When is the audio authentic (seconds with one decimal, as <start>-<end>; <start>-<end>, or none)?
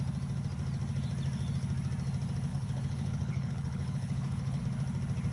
0.0-2.5; 4.6-5.3